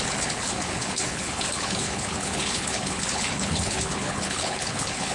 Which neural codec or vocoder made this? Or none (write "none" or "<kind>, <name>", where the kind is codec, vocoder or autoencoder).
codec, HILCodec